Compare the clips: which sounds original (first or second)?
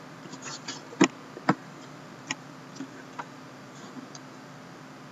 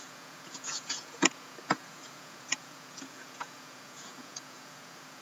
first